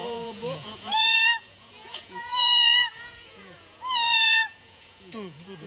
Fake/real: fake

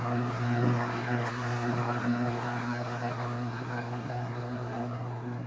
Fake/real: fake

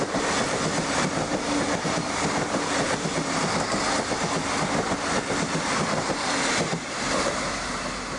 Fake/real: real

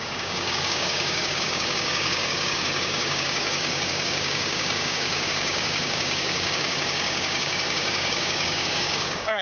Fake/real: fake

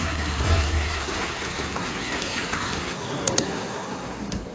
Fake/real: fake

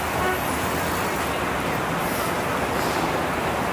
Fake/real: real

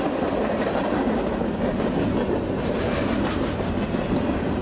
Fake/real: real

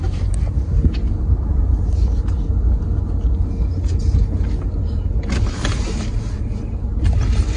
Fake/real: real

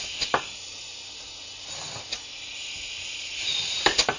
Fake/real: fake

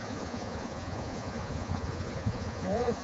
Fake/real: fake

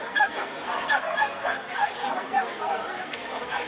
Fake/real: fake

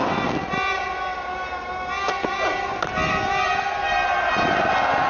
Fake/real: real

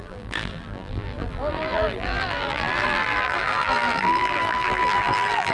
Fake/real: fake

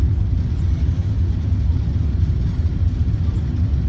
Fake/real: real